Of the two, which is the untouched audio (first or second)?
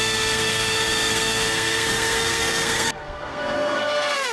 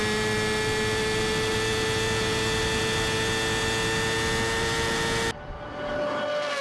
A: second